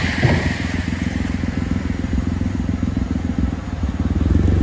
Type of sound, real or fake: real